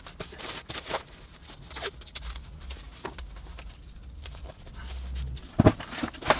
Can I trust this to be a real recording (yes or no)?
yes